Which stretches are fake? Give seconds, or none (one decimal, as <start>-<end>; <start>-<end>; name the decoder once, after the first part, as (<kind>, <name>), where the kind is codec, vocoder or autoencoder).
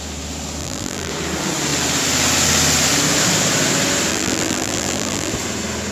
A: 0.6-1.1 (vocoder, BigVGAN v2); 4.1-5.3